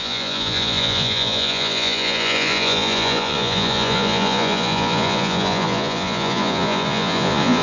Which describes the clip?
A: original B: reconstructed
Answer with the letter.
B